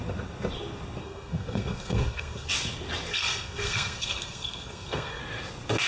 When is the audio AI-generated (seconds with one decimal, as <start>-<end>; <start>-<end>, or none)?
1.0-2.5; 3.1-5.2